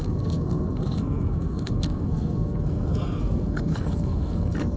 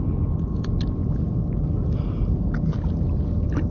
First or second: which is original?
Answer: second